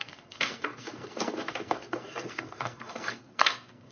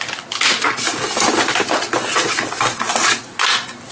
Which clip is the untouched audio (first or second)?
second